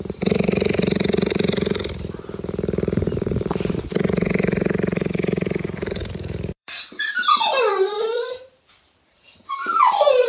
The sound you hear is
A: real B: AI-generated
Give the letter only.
B